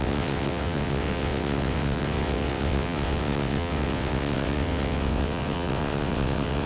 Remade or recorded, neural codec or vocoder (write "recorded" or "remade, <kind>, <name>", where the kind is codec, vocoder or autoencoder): remade, vocoder, WaveNeXt